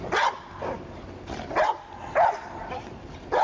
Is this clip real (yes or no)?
yes